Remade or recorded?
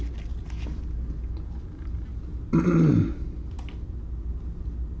recorded